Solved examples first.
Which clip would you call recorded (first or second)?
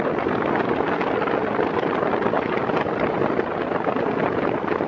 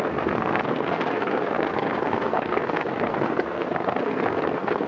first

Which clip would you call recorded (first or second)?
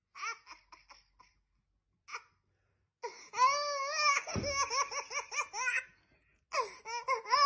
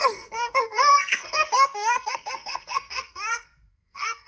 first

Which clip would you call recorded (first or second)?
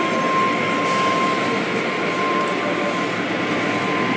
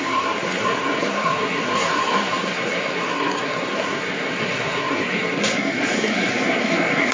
first